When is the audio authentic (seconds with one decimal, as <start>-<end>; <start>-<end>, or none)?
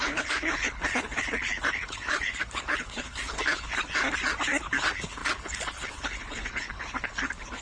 3.8-4.5